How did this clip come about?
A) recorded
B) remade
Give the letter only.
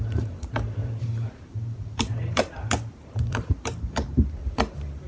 B